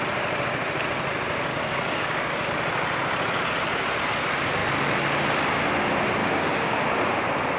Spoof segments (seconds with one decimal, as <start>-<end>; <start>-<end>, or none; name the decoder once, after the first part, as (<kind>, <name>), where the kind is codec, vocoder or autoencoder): 1.5-2.5 (codec, DAC); 6.2-6.8